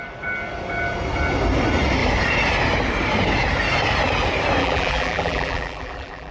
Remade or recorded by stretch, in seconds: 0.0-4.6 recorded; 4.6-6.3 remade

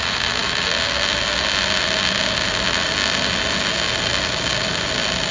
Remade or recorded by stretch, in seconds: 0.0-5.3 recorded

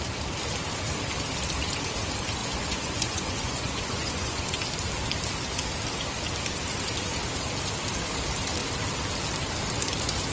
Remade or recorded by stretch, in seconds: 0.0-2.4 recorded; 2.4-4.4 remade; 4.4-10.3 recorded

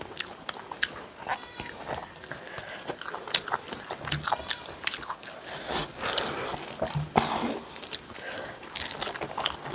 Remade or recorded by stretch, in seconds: 0.0-9.7 recorded

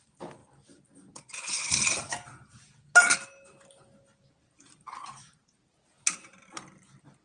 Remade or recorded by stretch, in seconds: 0.0-7.2 recorded